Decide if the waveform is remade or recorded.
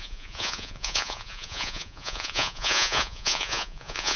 remade